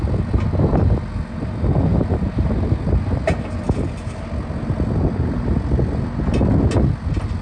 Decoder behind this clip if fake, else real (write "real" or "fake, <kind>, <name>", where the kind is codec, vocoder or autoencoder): real